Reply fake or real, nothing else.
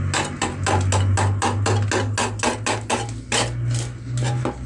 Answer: real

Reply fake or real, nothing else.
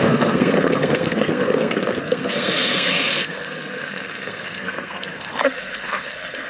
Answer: fake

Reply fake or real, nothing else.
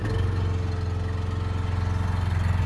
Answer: real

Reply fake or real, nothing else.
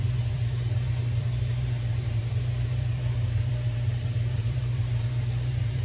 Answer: fake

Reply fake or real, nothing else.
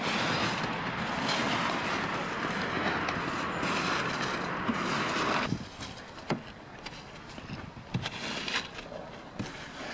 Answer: real